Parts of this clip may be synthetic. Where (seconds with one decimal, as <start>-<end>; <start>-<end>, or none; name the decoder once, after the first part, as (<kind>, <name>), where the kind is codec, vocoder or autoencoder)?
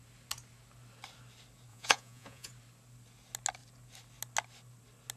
1.7-2.5 (vocoder, Vocos)